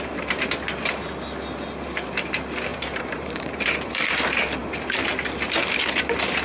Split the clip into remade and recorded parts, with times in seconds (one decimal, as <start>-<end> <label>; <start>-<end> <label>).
0.0-2.7 recorded; 2.7-3.5 remade; 3.5-6.4 recorded